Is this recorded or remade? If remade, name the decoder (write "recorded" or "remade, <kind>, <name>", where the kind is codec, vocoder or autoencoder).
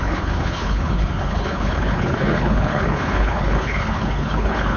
remade, codec, HILCodec